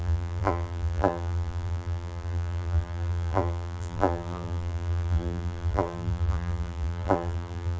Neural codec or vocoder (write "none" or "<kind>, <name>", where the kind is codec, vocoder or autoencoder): vocoder, BigVGAN v2